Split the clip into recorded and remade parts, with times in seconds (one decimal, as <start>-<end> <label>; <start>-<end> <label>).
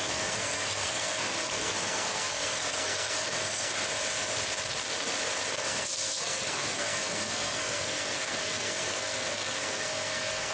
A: 0.0-3.7 remade; 3.7-5.5 recorded; 5.5-10.5 remade